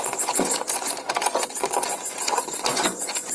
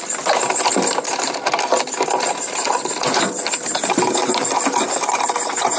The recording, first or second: second